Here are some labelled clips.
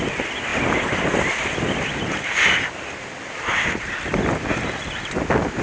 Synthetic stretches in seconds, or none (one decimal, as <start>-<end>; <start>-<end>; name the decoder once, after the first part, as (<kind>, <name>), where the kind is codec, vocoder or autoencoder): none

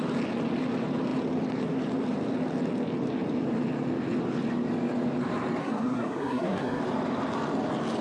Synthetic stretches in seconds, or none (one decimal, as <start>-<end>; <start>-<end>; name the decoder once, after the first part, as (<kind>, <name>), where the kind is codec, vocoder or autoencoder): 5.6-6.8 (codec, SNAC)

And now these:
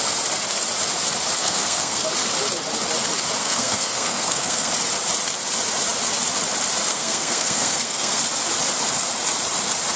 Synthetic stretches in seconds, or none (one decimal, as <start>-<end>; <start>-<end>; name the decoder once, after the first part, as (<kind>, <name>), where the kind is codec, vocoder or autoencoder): 1.4-2.1 (codec, SNAC); 3.4-4.7; 6.9-8.2

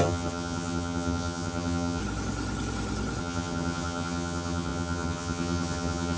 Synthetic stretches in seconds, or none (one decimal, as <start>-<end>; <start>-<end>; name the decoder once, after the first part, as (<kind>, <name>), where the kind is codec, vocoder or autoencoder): 0.0-2.0 (vocoder, HiFi-GAN); 3.2-6.2

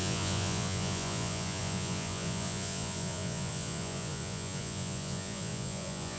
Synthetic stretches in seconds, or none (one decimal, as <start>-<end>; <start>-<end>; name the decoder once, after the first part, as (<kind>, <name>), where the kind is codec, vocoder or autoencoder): 0.0-6.2 (vocoder, Vocos)

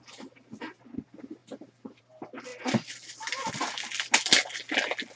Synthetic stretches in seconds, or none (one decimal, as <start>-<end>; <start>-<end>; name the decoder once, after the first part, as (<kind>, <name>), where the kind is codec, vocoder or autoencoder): none

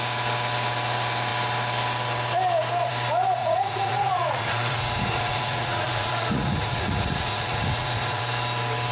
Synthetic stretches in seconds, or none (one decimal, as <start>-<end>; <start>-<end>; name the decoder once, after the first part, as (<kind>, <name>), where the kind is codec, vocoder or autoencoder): 3.4-8.2 (vocoder, Vocos)

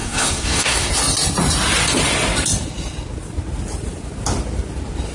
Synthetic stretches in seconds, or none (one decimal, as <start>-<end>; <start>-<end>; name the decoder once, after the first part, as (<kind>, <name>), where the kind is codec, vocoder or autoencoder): 0.0-0.9 (codec, SNAC)